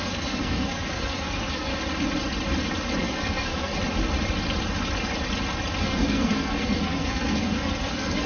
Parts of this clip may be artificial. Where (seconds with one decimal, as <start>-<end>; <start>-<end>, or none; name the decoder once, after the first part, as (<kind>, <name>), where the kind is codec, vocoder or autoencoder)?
0.0-1.7 (codec, SNAC); 3.0-3.7; 5.8-8.3